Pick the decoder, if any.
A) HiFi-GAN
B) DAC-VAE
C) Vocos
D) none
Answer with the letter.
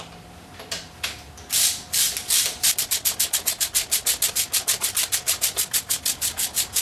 D